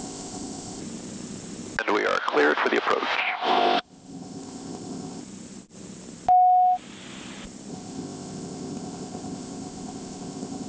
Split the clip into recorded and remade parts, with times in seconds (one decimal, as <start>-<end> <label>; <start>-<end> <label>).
0.0-0.8 remade; 0.8-3.2 recorded; 3.2-5.2 remade; 5.2-7.7 recorded; 7.7-10.7 remade